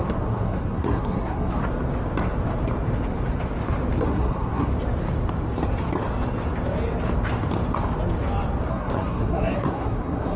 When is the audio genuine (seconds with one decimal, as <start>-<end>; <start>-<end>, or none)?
1.6-4.0; 4.7-8.7